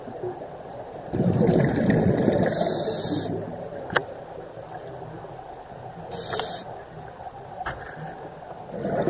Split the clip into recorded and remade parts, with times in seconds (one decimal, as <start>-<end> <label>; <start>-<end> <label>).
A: 0.0-9.1 recorded